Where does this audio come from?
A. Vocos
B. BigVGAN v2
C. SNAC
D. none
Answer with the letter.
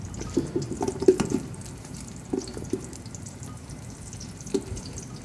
B